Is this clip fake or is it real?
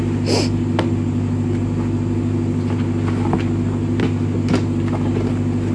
real